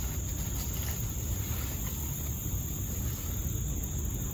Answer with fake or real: real